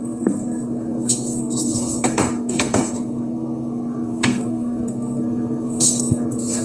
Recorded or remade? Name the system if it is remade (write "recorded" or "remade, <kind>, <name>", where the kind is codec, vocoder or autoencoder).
remade, codec, SNAC